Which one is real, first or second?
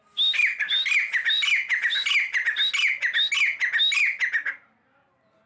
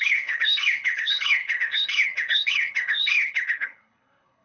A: first